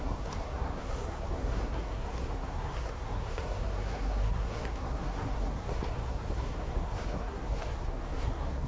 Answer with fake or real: fake